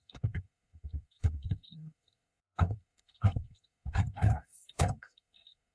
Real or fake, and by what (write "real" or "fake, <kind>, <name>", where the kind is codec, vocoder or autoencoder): fake, codec, SNAC